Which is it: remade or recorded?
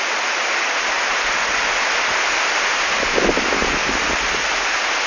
recorded